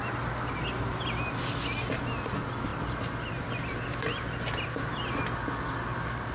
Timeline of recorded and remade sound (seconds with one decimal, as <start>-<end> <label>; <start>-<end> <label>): 0.0-6.3 recorded